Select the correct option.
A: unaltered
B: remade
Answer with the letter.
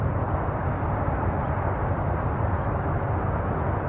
A